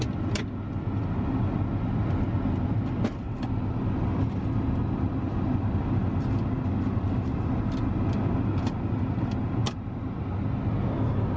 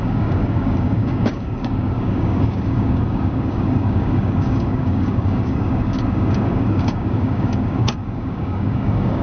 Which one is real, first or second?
first